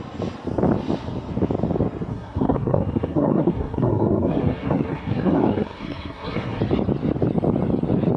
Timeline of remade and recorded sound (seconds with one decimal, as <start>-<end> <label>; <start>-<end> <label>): 0.0-2.1 recorded; 2.1-6.6 remade; 6.6-8.2 recorded